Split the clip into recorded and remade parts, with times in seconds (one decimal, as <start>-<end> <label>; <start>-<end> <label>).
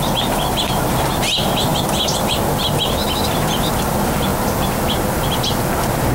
0.0-6.1 recorded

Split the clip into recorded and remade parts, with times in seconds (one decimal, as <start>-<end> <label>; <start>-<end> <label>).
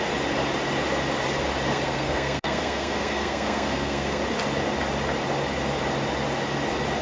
0.0-1.7 recorded; 1.7-4.2 remade; 4.2-7.0 recorded